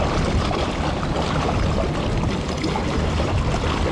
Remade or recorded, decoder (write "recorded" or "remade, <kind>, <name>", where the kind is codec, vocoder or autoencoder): recorded